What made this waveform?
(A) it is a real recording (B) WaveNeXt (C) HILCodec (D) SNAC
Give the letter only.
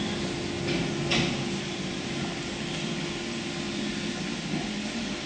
A